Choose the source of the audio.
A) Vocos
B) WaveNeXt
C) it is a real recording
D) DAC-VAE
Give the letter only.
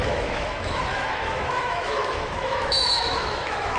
D